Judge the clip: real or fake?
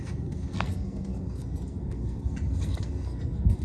fake